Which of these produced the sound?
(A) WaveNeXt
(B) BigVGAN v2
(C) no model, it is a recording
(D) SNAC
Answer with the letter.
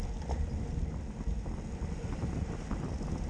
C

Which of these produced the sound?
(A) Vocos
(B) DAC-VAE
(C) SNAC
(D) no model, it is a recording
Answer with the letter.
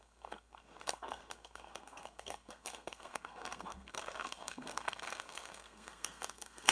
C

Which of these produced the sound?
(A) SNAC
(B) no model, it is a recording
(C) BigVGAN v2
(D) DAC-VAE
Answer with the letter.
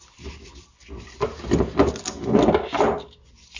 B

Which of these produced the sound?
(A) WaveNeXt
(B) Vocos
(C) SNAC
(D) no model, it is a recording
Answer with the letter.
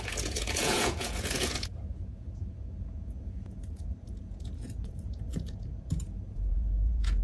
B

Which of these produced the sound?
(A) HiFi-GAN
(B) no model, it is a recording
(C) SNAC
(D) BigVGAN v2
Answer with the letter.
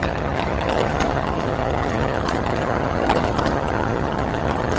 A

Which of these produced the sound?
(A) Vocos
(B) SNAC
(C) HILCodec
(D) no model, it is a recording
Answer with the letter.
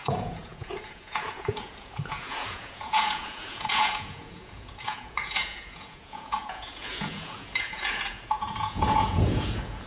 A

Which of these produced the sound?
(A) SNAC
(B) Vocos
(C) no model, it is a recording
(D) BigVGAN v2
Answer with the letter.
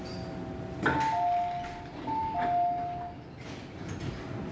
C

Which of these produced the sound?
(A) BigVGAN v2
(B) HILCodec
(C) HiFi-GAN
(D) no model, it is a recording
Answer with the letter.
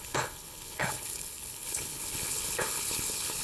B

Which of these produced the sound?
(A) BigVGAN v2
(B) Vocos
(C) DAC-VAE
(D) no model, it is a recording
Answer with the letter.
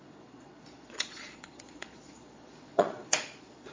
B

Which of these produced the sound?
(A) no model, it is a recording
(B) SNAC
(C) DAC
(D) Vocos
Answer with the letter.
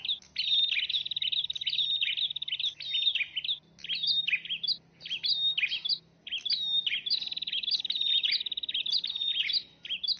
A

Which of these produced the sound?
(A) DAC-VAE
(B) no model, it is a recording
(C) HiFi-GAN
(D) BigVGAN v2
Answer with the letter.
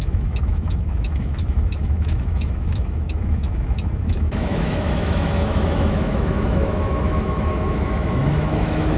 A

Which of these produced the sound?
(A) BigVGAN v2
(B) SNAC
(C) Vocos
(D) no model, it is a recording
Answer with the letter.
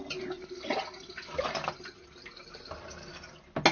D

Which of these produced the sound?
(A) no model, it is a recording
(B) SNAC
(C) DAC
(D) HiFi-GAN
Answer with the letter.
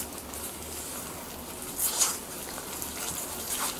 A